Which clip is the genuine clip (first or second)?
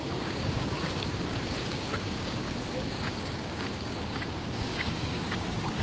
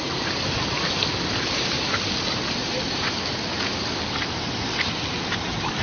second